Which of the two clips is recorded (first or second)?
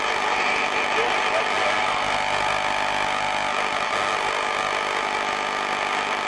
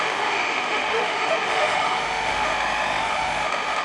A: first